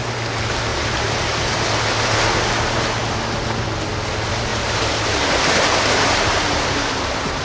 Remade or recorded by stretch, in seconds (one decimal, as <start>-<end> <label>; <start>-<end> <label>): 0.0-0.7 recorded; 0.7-1.3 remade; 1.3-4.5 recorded; 4.5-7.4 remade